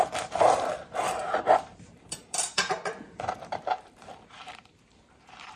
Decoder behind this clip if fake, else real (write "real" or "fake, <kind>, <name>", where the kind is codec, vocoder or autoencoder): fake, vocoder, BigVGAN v2